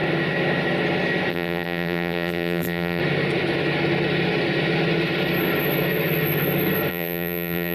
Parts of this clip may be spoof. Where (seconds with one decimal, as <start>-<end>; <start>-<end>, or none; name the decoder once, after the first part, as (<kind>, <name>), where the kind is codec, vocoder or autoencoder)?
1.3-3.0 (vocoder, BigVGAN v2); 6.9-7.7